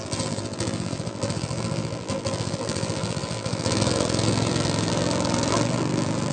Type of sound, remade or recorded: remade